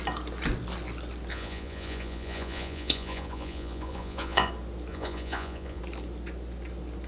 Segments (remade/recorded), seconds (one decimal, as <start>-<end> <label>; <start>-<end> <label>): 0.0-1.3 recorded; 1.3-4.5 remade; 4.5-4.9 recorded; 4.9-5.8 remade; 5.8-7.1 recorded